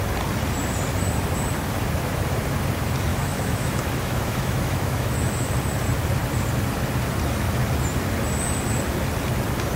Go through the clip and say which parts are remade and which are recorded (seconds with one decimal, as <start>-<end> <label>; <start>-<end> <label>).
0.0-3.1 recorded; 3.1-5.5 remade; 5.5-9.8 recorded